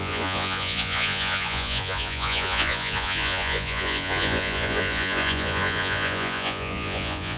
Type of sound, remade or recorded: remade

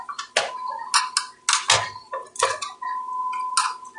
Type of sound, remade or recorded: recorded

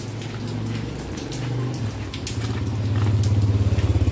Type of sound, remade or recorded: recorded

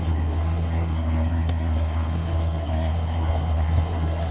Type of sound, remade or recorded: remade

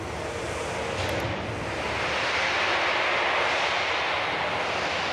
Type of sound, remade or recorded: recorded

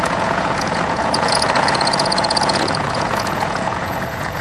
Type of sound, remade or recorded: remade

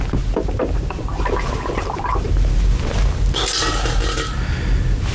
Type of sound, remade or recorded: recorded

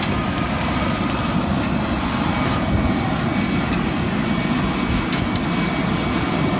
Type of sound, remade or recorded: recorded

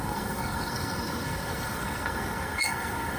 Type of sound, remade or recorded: remade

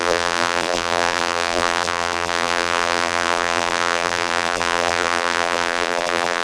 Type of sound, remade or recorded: remade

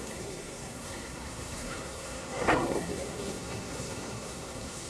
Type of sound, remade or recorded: remade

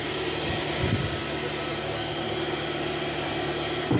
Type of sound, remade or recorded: recorded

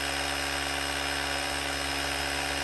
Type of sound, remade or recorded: recorded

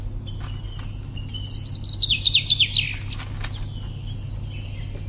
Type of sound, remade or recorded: recorded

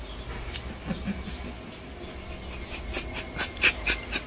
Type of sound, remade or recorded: recorded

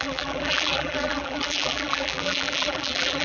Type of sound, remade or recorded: remade